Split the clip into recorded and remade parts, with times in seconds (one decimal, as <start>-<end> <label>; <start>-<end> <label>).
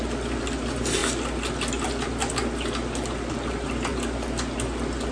0.0-5.1 recorded